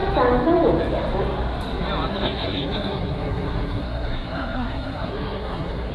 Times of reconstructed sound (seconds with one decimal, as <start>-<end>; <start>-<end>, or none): 2.1-5.9